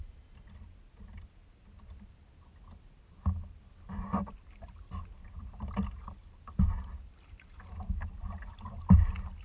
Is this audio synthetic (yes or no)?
no